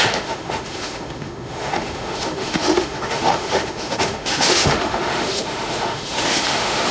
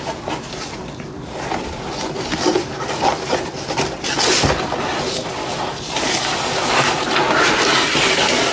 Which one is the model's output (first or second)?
first